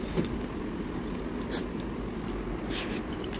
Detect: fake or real real